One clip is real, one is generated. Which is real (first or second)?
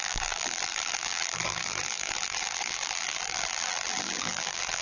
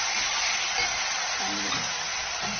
second